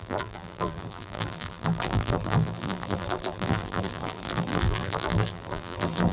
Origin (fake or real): fake